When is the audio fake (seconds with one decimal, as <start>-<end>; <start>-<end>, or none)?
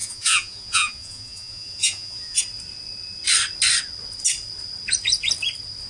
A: 0.0-2.4